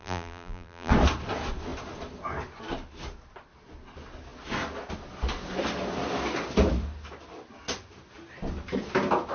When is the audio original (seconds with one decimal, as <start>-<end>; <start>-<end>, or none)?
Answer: 0.9-9.3